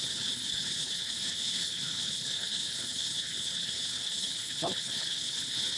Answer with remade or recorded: remade